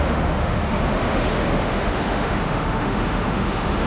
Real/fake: fake